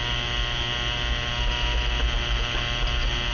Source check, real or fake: real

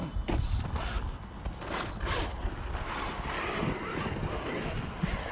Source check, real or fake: real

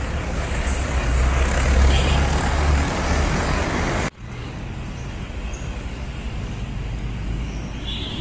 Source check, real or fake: fake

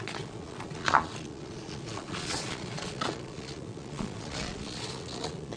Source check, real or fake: fake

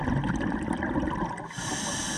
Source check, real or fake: real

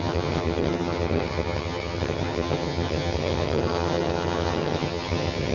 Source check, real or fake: fake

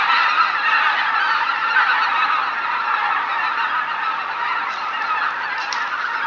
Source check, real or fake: real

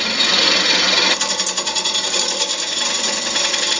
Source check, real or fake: real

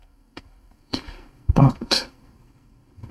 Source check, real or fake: fake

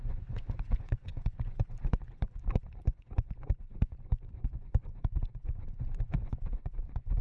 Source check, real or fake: fake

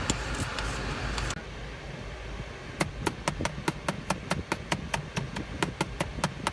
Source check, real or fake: real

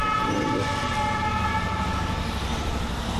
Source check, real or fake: real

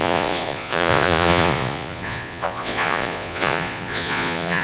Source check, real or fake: fake